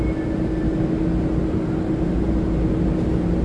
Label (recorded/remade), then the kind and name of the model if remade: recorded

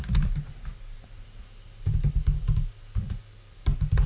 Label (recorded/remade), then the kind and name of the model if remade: recorded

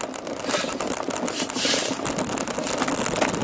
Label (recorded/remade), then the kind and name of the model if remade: recorded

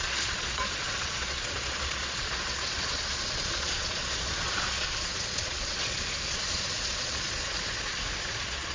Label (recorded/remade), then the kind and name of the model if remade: remade, vocoder, Vocos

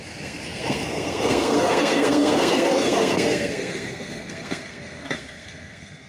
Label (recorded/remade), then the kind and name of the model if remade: remade, codec, SNAC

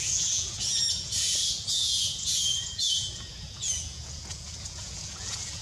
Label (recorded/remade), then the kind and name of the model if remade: remade, vocoder, Vocos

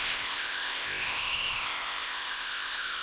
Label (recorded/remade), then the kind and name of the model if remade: remade, codec, ZipCodec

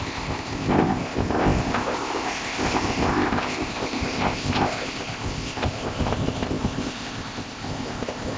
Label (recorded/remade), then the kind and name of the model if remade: remade, codec, ZipCodec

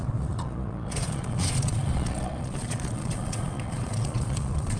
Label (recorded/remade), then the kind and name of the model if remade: remade, vocoder, Vocos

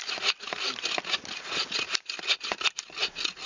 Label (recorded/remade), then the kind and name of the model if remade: recorded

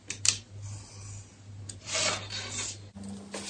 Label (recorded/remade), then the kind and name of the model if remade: recorded